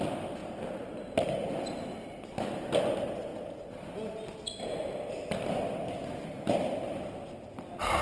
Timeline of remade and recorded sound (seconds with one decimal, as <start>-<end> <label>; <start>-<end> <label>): 0.0-8.0 recorded